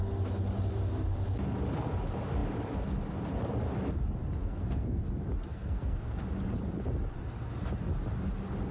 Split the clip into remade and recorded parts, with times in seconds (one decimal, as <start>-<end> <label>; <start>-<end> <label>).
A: 0.0-4.4 recorded; 4.4-5.0 remade; 5.0-5.5 recorded; 5.5-6.2 remade; 6.2-8.7 recorded